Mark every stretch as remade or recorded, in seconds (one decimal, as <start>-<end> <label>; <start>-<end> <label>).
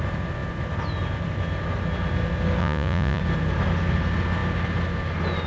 0.0-2.6 recorded; 2.6-3.2 remade; 3.2-5.5 recorded